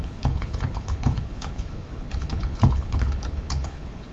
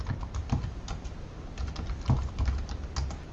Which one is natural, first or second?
second